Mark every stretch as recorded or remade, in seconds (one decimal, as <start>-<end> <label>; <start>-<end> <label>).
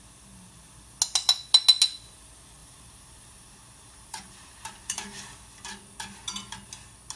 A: 0.0-2.6 recorded; 2.6-5.2 remade; 5.2-7.2 recorded